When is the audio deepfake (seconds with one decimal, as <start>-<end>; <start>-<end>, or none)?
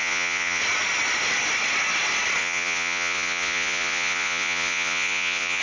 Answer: 0.0-0.6; 2.4-5.6